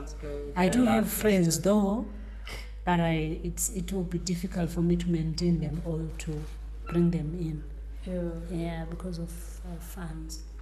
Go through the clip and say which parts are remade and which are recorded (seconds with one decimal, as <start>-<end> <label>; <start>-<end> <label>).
0.0-1.9 remade; 1.9-2.5 recorded; 2.5-5.7 remade; 5.7-10.1 recorded; 10.1-10.6 remade